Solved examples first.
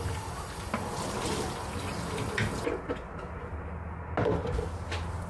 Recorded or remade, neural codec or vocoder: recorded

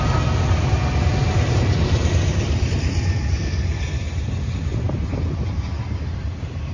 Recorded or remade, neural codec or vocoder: recorded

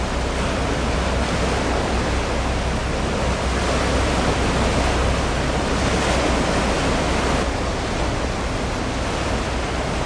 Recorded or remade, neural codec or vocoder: recorded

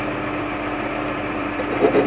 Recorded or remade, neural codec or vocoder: remade, vocoder, BigVGAN v2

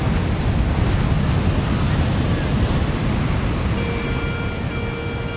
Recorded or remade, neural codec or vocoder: recorded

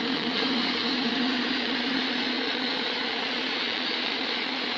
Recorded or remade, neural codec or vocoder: remade, vocoder, Vocos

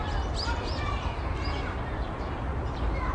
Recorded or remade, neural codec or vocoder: recorded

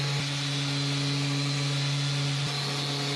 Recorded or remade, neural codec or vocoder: recorded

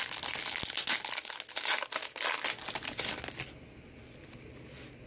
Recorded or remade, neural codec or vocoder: recorded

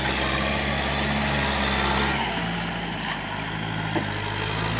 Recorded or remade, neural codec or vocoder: recorded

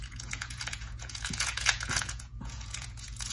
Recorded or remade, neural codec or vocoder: remade, vocoder, Vocos